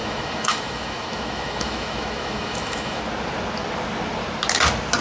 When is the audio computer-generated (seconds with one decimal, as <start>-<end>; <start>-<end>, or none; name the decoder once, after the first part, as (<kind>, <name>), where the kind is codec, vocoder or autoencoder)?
0.0-3.0 (autoencoder, DAC-VAE)